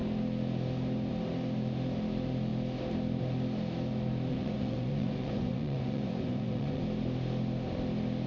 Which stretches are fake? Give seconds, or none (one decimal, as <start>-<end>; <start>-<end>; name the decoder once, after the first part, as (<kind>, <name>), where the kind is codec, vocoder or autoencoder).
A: 4.3-6.8 (vocoder, Vocos)